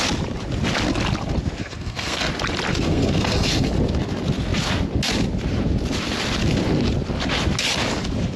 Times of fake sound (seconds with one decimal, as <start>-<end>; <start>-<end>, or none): 1.6-2.3; 2.7-3.7